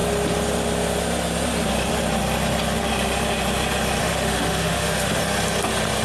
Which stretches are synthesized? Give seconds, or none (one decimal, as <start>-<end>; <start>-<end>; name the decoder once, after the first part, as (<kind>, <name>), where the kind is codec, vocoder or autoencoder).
4.0-5.2 (autoencoder, DAC-VAE)